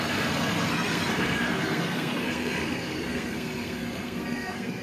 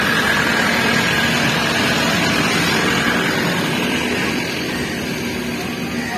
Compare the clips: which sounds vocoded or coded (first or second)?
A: first